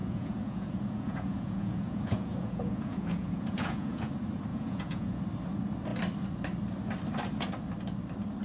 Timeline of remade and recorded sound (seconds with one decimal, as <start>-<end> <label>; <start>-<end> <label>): 0.0-4.1 remade; 4.1-4.5 recorded; 4.5-5.2 remade; 5.2-8.4 recorded